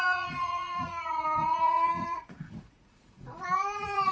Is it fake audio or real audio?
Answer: fake